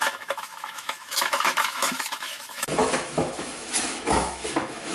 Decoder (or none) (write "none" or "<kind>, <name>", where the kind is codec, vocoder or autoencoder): autoencoder, DAC-VAE